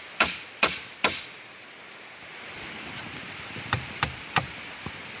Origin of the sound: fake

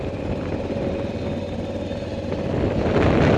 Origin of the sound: real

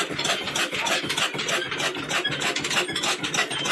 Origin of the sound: real